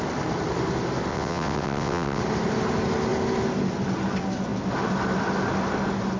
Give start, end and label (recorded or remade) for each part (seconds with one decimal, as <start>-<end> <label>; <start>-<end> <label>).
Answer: 0.0-1.1 recorded; 1.1-2.2 remade; 2.2-6.2 recorded